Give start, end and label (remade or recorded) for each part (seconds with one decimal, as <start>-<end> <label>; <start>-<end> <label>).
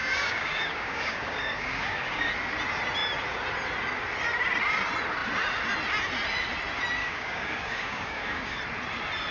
0.0-2.3 remade; 2.3-7.0 recorded; 7.0-8.6 remade; 8.6-9.3 recorded